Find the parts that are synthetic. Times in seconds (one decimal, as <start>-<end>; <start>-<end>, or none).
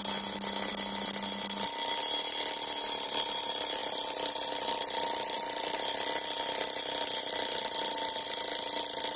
none